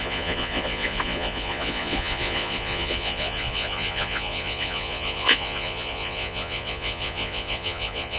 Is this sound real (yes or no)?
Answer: no